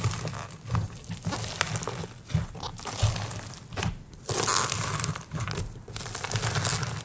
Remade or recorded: recorded